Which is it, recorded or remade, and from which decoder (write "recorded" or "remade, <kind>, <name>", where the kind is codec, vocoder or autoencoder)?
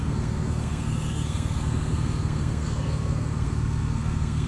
remade, codec, SNAC